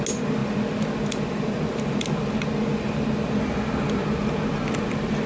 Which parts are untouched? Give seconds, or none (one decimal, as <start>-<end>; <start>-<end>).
0.0-5.3